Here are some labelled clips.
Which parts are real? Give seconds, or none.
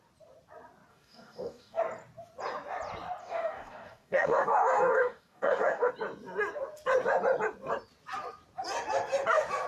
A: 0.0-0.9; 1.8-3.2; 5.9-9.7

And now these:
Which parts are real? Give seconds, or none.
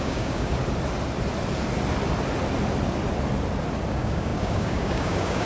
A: 0.6-3.9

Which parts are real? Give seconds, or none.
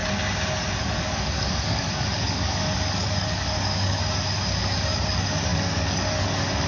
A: 0.0-0.8; 4.0-4.6